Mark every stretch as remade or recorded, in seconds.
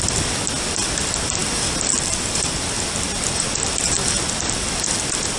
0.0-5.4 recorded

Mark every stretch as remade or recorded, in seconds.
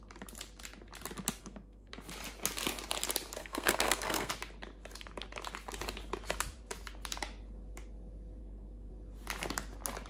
0.0-1.4 recorded; 1.4-1.9 remade; 1.9-3.4 recorded; 3.4-4.3 remade; 4.3-8.4 recorded; 8.4-8.9 remade; 8.9-10.1 recorded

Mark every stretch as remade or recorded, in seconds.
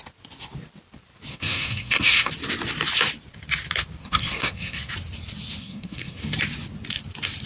0.0-1.3 recorded; 1.3-2.3 remade; 2.3-4.0 recorded; 4.0-4.9 remade; 4.9-5.6 recorded; 5.6-6.2 remade; 6.2-7.5 recorded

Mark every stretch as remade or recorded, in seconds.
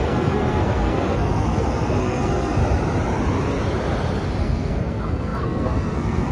0.0-2.6 remade; 2.6-4.4 recorded; 4.4-6.3 remade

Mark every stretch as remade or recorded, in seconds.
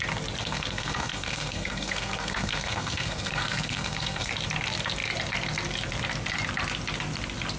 0.0-0.4 recorded; 0.4-4.3 remade; 4.3-7.6 recorded